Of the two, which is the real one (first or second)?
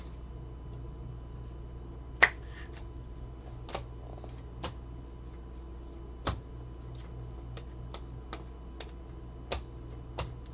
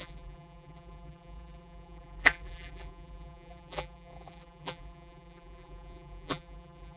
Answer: first